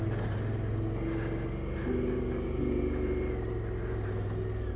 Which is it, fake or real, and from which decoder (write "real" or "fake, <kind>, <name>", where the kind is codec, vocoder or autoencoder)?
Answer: real